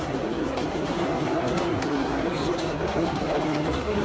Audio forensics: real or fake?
fake